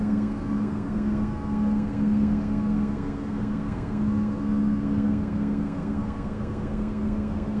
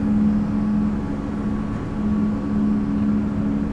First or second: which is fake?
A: first